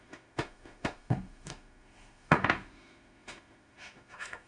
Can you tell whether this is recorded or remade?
remade